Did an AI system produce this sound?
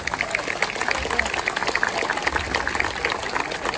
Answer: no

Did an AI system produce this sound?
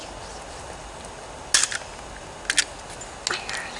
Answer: no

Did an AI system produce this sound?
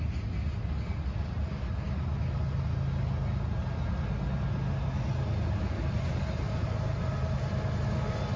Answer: no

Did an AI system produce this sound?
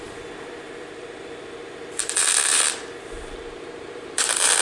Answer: yes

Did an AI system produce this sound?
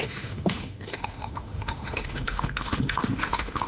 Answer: yes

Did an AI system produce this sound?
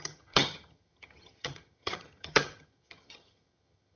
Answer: yes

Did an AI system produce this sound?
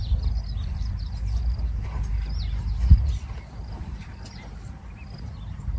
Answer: no